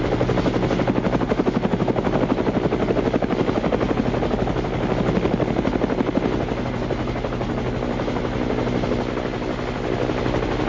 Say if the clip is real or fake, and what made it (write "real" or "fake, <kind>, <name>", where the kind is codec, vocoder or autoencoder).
real